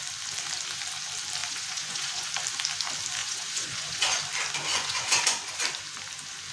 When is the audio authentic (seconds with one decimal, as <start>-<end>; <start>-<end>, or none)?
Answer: 0.0-1.4; 2.3-3.2; 4.2-4.7; 5.4-6.5